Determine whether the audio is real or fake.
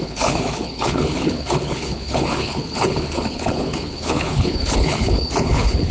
fake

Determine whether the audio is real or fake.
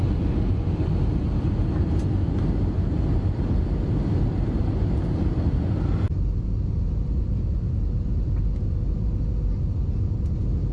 real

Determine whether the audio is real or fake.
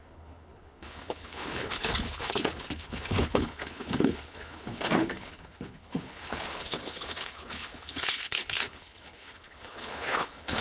fake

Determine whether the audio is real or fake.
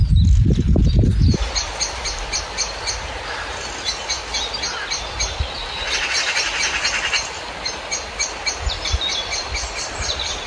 real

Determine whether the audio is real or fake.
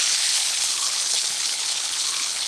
fake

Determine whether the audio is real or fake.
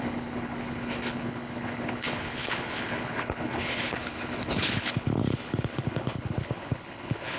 fake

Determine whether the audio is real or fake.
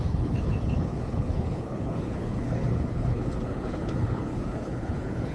fake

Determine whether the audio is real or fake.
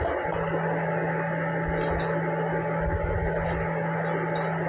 real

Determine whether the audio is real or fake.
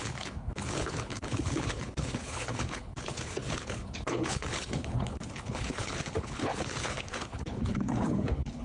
fake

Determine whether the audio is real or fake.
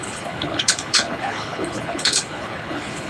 fake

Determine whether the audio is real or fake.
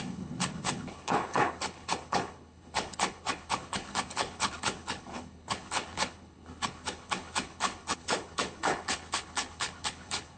fake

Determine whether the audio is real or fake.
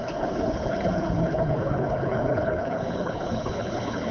fake